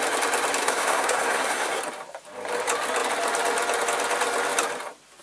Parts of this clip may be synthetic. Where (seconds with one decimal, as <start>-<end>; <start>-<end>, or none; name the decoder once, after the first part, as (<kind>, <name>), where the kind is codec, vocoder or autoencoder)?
0.6-1.8 (codec, SNAC)